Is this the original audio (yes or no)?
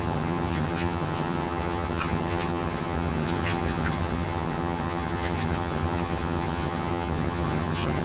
no